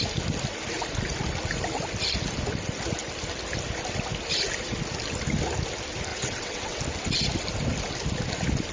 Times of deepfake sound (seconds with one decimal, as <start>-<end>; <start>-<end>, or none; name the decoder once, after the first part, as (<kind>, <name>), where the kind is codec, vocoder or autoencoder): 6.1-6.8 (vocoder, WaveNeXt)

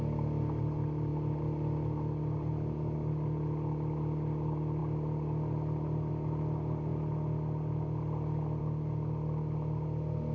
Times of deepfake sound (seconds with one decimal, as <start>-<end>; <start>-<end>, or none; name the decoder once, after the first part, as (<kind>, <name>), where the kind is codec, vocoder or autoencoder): none

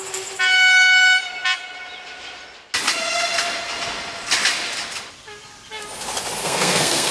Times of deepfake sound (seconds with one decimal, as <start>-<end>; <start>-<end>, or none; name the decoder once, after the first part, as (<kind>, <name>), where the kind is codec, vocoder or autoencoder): 6.4-7.1 (codec, SNAC)